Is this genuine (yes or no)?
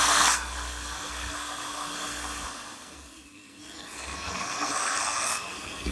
no